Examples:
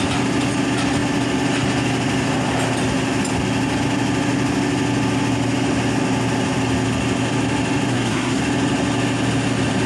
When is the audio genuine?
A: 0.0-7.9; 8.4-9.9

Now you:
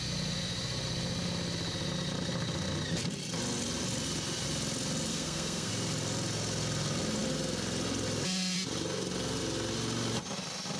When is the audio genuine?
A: 0.0-5.1; 5.7-10.8